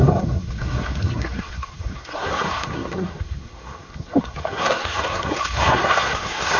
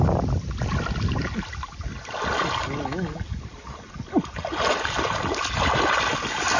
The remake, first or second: first